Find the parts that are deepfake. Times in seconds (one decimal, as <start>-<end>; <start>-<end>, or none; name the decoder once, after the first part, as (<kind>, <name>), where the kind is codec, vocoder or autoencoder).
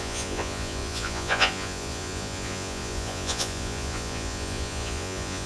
0.0-5.5 (vocoder, Vocos)